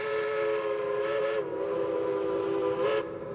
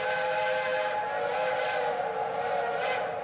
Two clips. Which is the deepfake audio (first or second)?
first